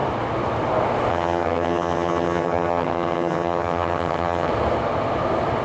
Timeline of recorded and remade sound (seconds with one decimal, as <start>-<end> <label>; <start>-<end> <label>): 0.0-1.1 recorded; 1.1-4.5 remade; 4.5-5.6 recorded